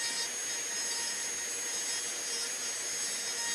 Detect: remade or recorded recorded